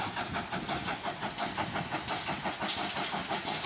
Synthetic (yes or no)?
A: no